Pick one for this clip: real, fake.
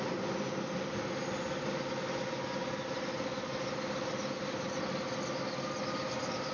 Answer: real